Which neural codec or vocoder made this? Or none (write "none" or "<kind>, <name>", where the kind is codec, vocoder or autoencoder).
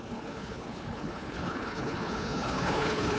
codec, HILCodec